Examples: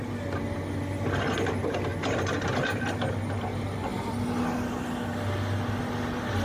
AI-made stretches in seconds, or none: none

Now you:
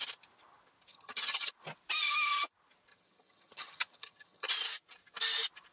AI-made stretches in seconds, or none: 0.9-1.5 (vocoder, HiFi-GAN); 2.9-4.5

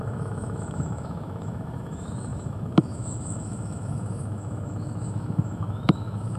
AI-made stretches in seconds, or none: 0.0-6.4 (autoencoder, DAC-VAE)

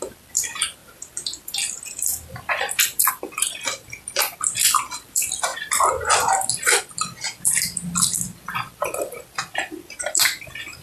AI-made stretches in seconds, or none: 0.0-10.8 (vocoder, BigVGAN v2)

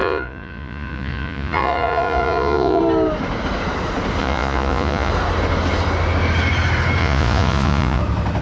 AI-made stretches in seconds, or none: 0.0-2.8 (vocoder, Vocos); 4.2-5.1; 7.0-8.0

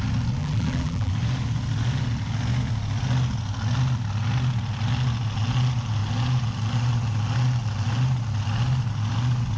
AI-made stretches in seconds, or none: 0.4-1.1 (vocoder, BigVGAN v2)

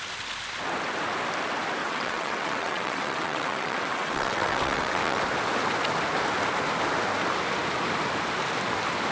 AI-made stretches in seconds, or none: 1.8-5.2 (vocoder, WaveNeXt)

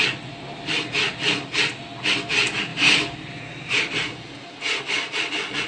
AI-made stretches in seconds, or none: 2.7-3.8 (vocoder, BigVGAN v2)